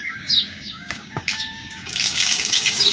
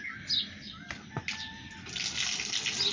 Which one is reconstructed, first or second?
first